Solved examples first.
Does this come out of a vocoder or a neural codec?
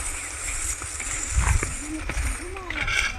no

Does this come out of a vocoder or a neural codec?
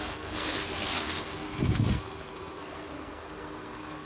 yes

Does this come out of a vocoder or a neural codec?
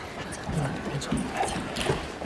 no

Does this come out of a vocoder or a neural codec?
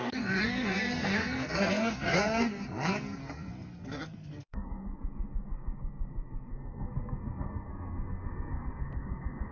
yes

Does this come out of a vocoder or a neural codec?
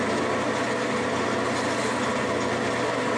no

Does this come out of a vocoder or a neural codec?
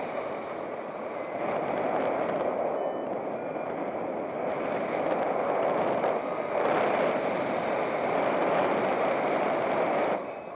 no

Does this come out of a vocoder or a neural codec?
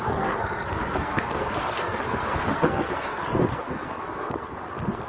yes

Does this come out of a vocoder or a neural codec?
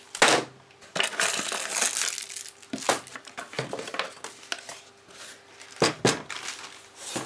no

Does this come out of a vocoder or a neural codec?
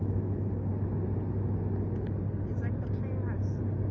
no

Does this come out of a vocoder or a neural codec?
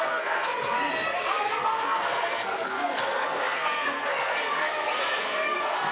yes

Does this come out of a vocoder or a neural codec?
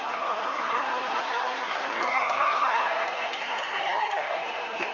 yes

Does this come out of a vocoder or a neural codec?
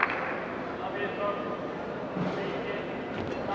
no